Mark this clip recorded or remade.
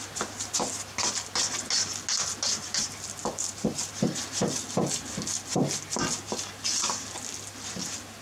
recorded